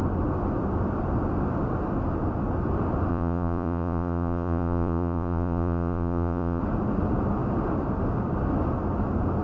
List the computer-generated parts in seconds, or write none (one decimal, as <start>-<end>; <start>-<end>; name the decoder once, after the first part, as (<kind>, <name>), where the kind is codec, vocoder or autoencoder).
3.1-6.6 (vocoder, Vocos)